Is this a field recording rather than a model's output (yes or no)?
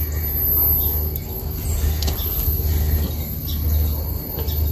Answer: yes